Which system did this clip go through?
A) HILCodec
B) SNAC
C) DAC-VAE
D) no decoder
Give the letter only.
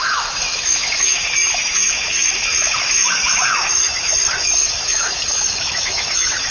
C